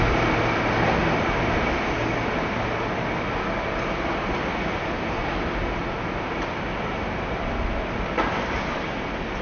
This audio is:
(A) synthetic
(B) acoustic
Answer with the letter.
B